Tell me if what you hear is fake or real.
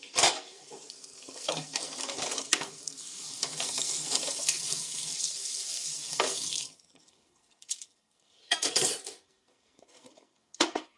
fake